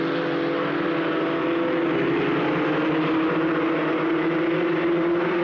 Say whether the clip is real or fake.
real